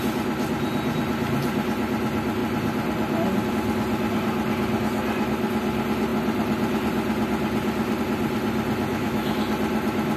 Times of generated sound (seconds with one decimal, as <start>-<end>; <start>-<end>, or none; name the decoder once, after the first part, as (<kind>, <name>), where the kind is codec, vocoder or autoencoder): 8.9-9.4 (autoencoder, DAC-VAE)

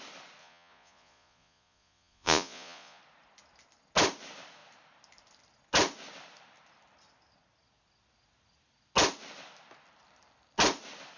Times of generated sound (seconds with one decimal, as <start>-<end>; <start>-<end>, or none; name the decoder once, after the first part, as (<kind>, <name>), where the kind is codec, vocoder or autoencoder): 0.4-3.0 (vocoder, Vocos)

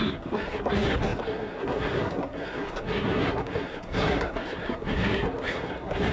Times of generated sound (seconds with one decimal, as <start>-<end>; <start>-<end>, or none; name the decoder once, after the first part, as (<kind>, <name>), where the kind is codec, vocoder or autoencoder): 0.0-6.1 (codec, SNAC)

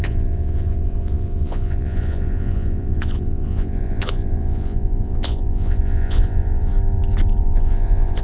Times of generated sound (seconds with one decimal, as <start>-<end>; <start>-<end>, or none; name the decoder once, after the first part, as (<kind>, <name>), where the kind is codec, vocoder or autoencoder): 0.0-6.7 (vocoder, Vocos); 7.4-8.2

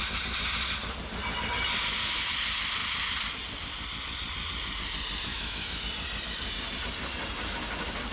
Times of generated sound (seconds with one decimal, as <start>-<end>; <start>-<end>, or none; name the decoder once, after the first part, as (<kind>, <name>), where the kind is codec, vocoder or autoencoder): 5.3-5.8 (autoencoder, DAC-VAE)

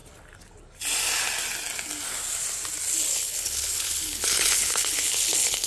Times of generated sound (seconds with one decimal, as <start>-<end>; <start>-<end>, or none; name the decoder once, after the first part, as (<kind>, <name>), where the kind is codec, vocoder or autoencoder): 3.1-5.7 (codec, HILCodec)